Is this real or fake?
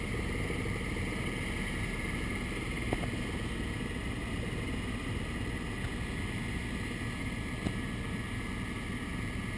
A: real